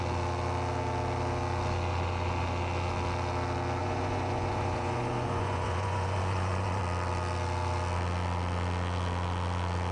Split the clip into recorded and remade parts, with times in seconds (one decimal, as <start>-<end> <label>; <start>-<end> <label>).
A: 0.0-3.8 recorded; 3.8-6.8 remade; 6.8-9.9 recorded